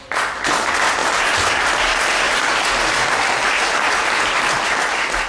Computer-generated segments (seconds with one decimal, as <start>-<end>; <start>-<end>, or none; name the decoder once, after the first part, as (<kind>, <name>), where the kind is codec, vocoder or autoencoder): none